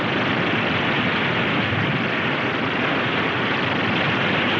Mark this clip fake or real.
fake